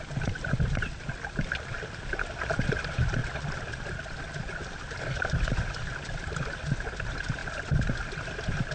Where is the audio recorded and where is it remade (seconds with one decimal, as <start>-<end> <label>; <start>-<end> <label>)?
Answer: 0.0-8.7 recorded